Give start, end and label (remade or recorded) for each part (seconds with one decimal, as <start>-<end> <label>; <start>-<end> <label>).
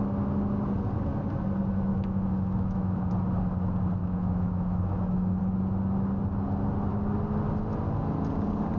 0.0-1.9 recorded; 1.9-3.1 remade; 3.1-4.0 recorded; 4.0-5.4 remade; 5.4-8.8 recorded